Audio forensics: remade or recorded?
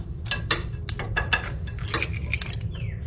recorded